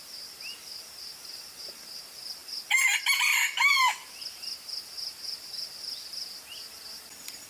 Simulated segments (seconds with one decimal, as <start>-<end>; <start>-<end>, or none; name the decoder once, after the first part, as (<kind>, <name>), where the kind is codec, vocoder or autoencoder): none